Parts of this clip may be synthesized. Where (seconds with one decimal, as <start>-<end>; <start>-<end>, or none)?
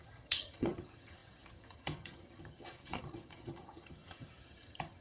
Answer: 0.0-5.0